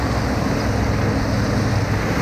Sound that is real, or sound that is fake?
real